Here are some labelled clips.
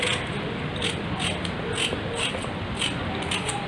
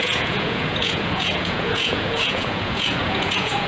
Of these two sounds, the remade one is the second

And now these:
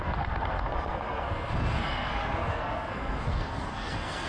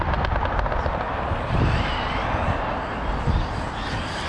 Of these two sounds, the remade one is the first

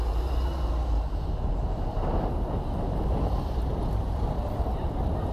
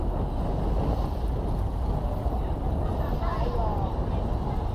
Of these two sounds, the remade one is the first